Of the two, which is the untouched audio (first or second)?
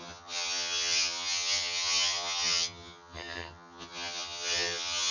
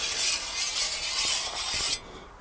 second